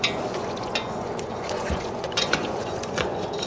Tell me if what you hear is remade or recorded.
remade